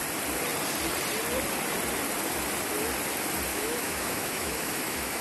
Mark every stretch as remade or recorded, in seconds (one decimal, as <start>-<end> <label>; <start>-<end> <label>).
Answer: 0.0-3.5 recorded; 3.5-5.2 remade